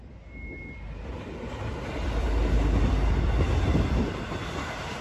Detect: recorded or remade recorded